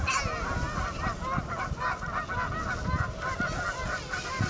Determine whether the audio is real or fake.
real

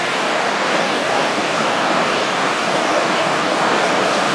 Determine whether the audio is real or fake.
fake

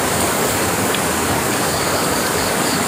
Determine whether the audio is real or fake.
fake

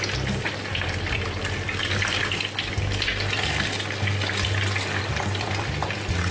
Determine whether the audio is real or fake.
real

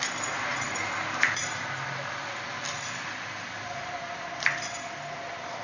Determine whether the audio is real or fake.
real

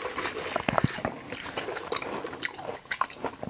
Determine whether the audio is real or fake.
real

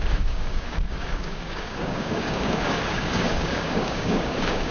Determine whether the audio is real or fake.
fake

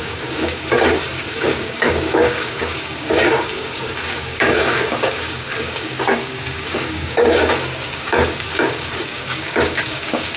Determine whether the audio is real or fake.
fake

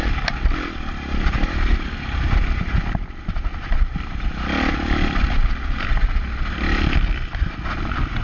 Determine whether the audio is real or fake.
real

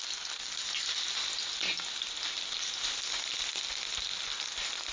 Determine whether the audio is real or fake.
real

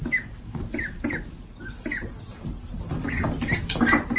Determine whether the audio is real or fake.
real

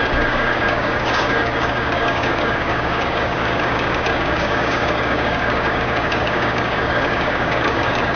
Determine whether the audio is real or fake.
fake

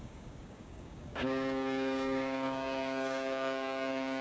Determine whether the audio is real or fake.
fake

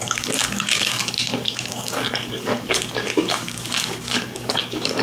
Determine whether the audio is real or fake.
fake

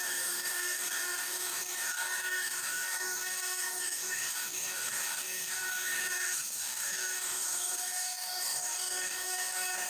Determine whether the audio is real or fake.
fake